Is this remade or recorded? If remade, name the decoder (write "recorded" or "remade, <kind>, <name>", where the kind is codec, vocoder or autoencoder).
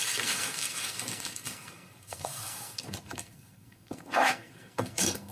remade, codec, SNAC